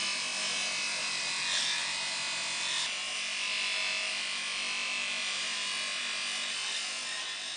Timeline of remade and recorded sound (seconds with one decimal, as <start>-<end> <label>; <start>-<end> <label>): 0.0-7.6 recorded